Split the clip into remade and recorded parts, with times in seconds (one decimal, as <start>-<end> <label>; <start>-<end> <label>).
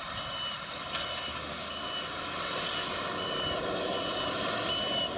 0.0-1.3 recorded; 1.3-1.9 remade; 1.9-5.2 recorded